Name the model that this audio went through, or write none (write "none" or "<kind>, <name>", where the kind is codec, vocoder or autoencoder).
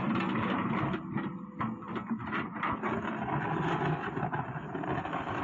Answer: none